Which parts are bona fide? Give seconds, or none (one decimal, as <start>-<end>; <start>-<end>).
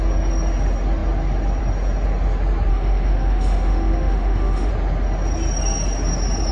0.0-2.7; 4.7-6.5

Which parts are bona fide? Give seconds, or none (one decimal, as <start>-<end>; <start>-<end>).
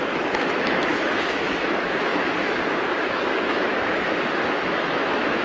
none